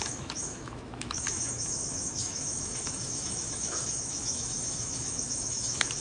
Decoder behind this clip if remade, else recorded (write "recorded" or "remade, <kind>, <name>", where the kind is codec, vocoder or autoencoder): remade, autoencoder, DAC-VAE